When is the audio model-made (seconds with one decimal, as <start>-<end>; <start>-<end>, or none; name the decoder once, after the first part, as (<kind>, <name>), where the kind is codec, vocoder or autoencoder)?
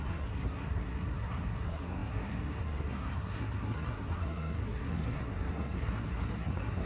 0.0-6.9 (codec, SNAC)